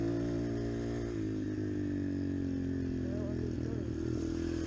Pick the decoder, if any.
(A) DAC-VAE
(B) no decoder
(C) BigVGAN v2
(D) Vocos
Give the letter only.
B